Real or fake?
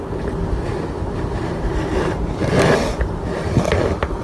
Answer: real